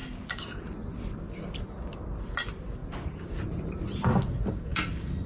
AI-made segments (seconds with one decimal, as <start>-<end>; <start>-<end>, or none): 0.0-0.5; 2.8-3.8

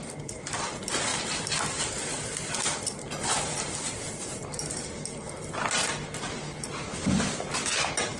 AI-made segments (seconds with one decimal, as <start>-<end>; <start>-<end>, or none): none